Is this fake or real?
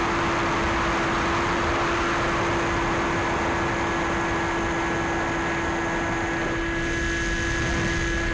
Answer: real